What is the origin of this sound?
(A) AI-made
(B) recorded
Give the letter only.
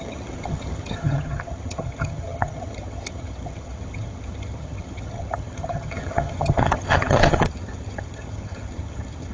A